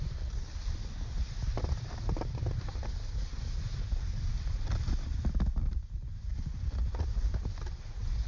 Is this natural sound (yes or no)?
yes